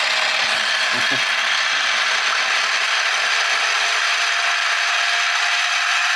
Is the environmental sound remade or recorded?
recorded